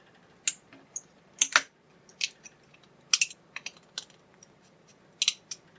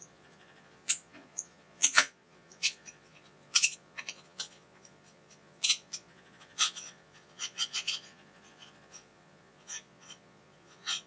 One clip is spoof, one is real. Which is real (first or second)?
first